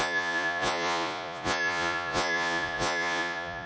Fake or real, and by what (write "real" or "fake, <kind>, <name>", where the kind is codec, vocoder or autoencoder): fake, vocoder, Vocos